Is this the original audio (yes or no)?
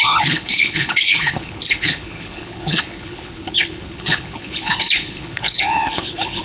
no